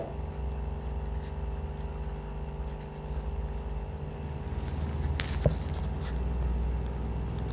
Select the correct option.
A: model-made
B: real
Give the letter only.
B